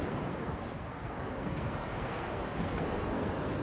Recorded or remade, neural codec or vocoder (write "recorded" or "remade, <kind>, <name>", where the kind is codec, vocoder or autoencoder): remade, codec, SNAC